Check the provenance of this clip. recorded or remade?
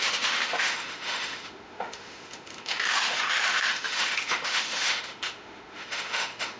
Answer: remade